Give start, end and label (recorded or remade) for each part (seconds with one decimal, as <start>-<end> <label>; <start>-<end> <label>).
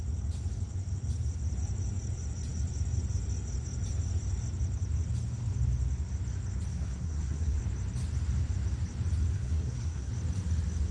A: 0.0-6.7 recorded; 6.7-7.6 remade; 7.6-9.3 recorded; 9.3-10.1 remade; 10.1-10.9 recorded